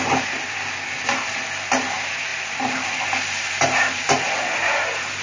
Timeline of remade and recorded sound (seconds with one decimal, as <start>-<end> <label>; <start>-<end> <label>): 0.0-5.2 recorded